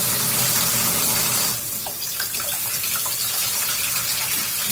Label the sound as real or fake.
real